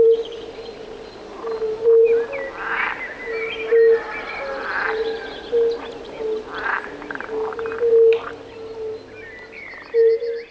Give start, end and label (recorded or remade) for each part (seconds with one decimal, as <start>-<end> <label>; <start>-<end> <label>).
0.0-10.5 recorded